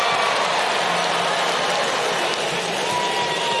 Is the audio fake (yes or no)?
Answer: no